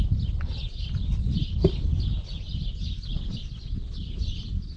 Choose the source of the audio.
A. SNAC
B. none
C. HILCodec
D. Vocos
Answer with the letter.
B